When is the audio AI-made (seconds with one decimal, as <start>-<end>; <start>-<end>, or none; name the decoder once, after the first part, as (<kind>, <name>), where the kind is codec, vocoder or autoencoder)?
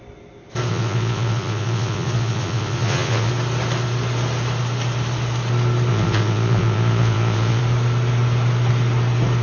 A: 0.7-3.3 (vocoder, Vocos); 5.9-7.6